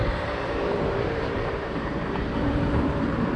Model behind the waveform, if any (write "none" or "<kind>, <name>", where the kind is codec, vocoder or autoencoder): vocoder, BigVGAN v2